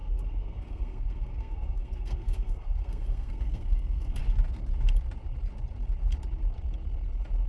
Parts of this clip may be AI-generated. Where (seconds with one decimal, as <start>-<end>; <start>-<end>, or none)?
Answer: 0.0-4.2